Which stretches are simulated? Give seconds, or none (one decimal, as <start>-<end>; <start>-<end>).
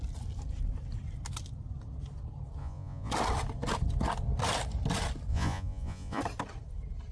2.6-3.1; 5.3-6.2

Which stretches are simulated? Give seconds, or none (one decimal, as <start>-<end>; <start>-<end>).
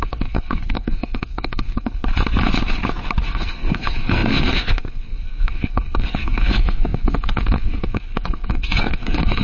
0.0-2.0; 3.2-9.4